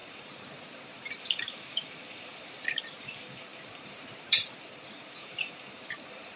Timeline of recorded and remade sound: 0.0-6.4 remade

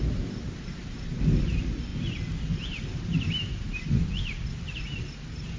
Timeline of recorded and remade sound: 0.0-5.6 recorded

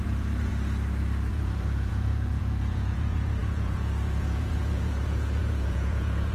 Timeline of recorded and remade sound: 0.0-0.5 remade; 0.5-1.3 recorded; 1.3-6.3 remade